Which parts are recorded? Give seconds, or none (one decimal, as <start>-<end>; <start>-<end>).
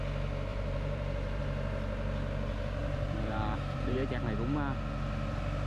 0.0-0.5; 1.4-2.8; 4.1-5.7